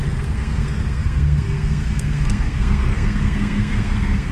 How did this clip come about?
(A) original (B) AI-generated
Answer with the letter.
B